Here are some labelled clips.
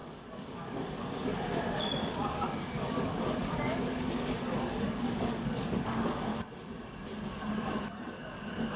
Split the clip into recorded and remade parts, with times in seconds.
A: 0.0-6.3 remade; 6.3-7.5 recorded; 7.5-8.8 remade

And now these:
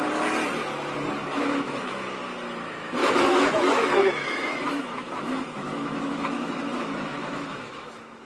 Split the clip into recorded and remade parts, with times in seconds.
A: 0.0-1.3 recorded; 1.3-2.2 remade; 2.2-3.0 recorded; 3.0-8.2 remade

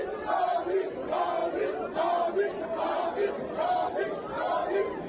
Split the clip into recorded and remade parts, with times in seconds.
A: 0.0-5.1 recorded